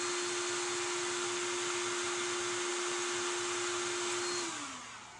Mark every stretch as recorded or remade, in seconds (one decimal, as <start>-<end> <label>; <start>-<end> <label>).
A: 0.0-5.2 recorded